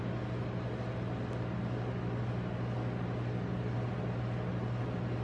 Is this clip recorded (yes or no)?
yes